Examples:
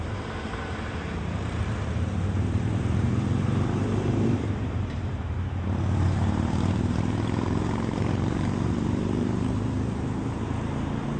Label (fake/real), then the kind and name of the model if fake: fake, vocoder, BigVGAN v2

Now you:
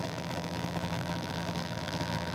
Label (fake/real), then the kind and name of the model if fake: fake, vocoder, BigVGAN v2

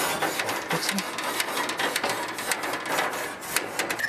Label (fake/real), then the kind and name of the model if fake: real